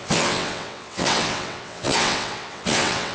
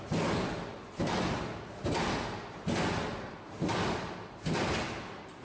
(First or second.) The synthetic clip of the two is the first